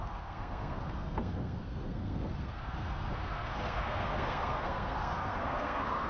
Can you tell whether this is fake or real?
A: fake